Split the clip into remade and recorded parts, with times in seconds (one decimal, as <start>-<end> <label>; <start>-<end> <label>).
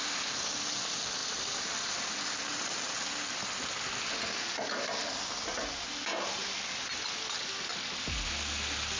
0.0-9.0 recorded